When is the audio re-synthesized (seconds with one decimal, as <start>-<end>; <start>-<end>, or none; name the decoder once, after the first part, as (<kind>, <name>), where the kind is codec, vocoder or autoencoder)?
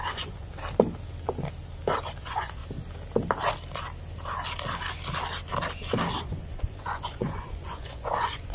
0.0-0.5 (vocoder, Vocos); 2.2-2.6; 6.2-8.5